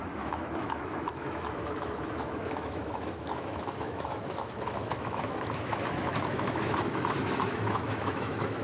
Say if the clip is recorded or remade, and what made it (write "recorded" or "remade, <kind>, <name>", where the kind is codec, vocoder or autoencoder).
remade, autoencoder, DAC-VAE